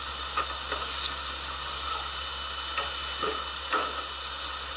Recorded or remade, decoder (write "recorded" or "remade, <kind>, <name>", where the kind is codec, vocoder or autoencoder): recorded